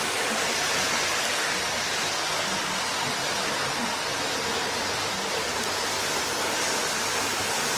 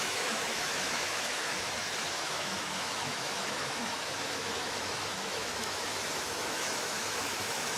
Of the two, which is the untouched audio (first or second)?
first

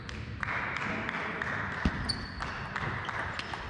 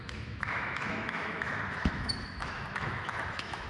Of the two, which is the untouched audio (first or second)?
first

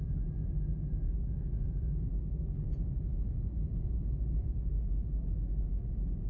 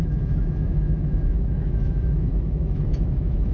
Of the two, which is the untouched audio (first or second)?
first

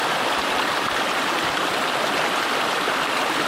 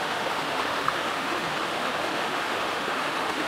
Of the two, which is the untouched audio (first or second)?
first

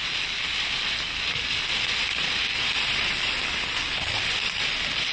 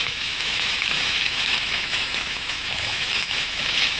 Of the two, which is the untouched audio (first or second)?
first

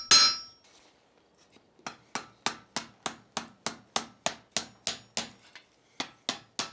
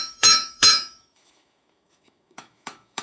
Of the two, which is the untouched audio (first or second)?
first